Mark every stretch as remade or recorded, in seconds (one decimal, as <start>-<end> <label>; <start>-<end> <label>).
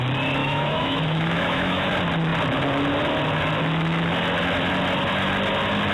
0.0-0.4 recorded; 0.4-1.9 remade; 1.9-5.9 recorded